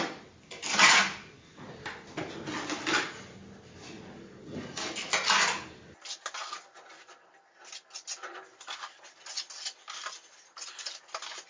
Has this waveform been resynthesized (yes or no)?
no